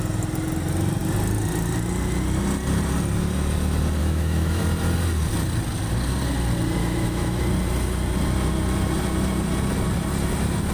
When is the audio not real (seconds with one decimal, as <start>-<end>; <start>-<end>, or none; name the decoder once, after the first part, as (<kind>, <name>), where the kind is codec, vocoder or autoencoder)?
4.0-4.6 (autoencoder, DAC-VAE); 6.8-7.4